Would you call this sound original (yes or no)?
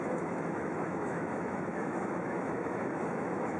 no